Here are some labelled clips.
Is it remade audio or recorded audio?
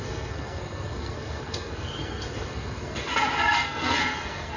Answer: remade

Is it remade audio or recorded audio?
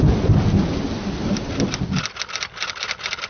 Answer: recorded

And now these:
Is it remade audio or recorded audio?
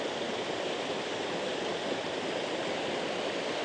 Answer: remade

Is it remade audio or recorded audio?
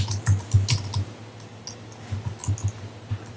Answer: recorded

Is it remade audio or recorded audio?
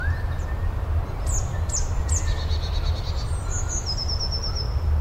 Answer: recorded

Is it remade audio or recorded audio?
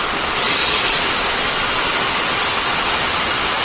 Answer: remade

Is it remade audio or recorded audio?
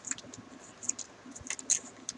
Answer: recorded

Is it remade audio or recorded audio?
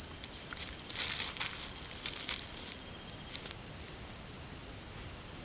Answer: recorded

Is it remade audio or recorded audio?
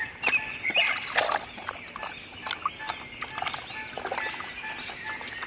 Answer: recorded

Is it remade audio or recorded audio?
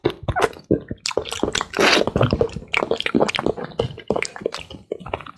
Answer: recorded